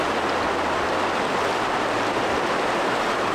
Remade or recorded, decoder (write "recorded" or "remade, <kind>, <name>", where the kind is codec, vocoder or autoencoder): recorded